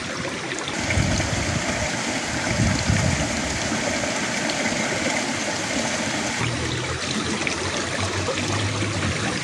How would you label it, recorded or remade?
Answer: recorded